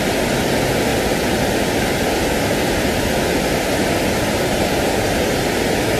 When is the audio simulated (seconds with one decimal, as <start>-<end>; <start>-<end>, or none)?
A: none

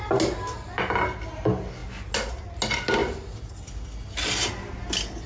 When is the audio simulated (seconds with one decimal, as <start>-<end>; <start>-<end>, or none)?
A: none

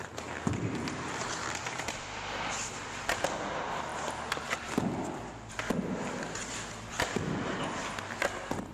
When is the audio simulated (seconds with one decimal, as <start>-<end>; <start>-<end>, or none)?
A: none

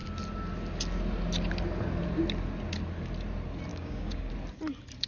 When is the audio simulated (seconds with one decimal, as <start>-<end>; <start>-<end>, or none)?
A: 3.7-4.3